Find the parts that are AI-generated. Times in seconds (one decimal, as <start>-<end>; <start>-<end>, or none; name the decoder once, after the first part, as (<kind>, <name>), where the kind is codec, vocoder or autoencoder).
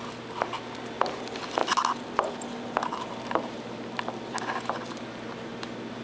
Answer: none